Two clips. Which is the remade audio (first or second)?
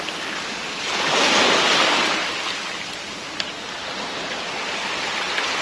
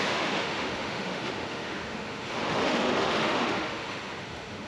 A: second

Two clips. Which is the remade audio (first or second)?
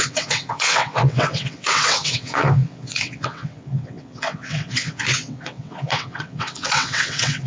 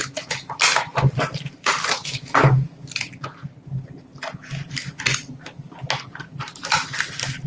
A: first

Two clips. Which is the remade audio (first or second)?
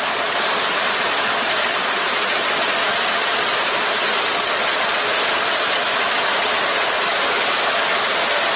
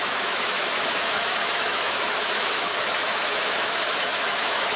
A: second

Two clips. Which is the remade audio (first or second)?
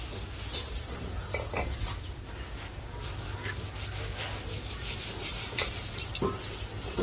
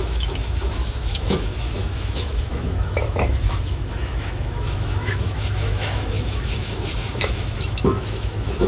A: second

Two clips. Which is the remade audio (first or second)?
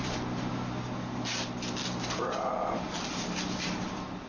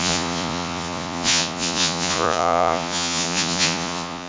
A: second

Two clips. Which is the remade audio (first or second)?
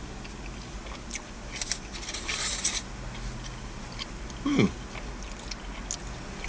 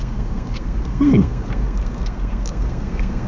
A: second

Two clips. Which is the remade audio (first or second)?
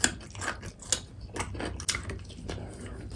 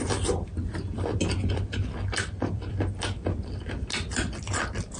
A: second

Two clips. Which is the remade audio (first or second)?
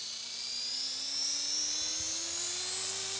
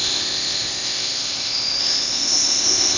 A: second